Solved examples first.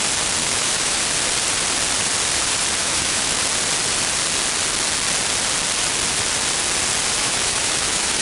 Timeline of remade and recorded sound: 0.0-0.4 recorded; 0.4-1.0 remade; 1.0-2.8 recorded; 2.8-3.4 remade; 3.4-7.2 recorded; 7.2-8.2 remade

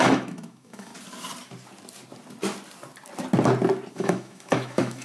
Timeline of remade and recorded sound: 0.0-0.9 remade; 0.9-3.9 recorded; 3.9-5.0 remade

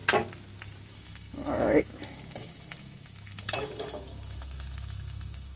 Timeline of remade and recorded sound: 0.0-0.9 recorded; 0.9-5.6 remade

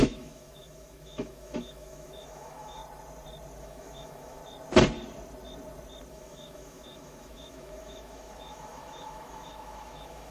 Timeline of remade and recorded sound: 0.0-2.8 remade; 2.8-3.6 recorded; 3.6-4.4 remade; 4.4-6.1 recorded; 6.1-10.3 remade